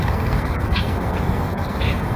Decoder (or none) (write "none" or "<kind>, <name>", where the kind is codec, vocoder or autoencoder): codec, SNAC